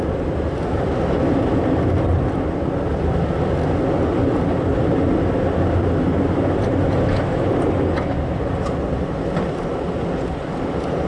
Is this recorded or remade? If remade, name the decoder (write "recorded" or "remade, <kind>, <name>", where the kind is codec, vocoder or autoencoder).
recorded